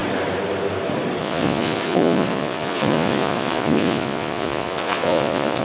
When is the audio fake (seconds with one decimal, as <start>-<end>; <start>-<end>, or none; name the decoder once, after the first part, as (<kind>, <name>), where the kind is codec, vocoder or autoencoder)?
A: 1.2-5.6 (vocoder, Vocos)